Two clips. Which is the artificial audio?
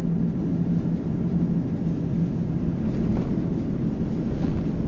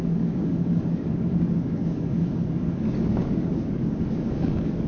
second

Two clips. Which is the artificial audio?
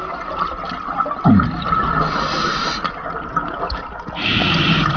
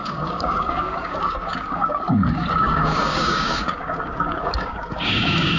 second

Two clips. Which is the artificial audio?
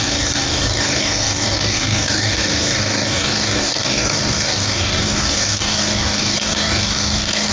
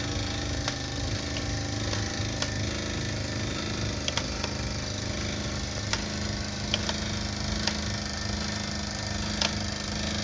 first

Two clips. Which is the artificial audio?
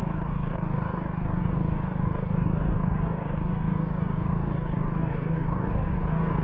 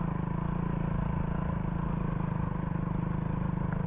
first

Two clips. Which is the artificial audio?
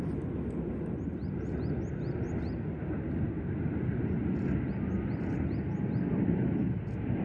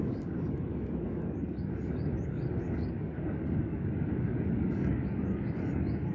second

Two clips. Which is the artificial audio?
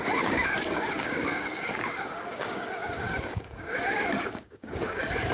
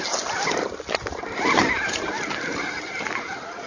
first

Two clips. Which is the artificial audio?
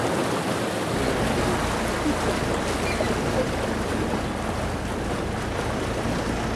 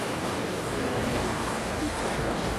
second